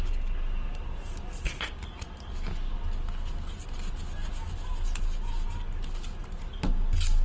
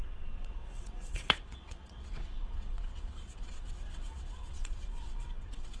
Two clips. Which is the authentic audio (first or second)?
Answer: first